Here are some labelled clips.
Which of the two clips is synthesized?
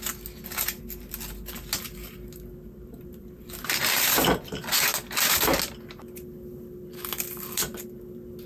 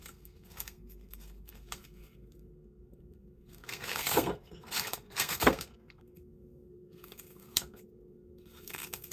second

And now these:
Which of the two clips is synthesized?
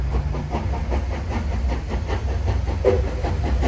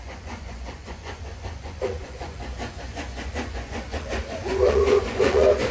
second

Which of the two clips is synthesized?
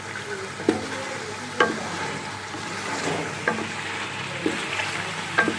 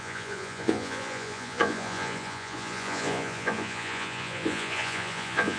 second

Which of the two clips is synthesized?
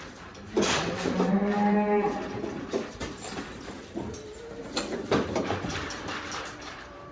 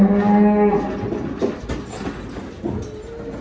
first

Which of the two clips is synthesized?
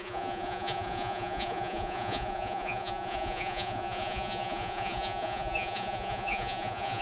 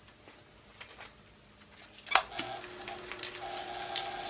first